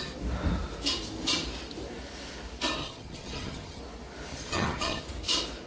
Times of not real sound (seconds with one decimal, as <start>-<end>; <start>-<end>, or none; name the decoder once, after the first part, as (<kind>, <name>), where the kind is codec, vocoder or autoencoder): 2.8-3.8 (vocoder, HiFi-GAN); 4.3-5.0